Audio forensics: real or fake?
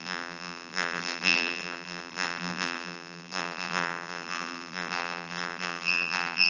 fake